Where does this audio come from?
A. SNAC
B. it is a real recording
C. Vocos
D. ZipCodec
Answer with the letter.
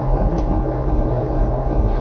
A